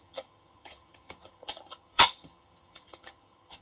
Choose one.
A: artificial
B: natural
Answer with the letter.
A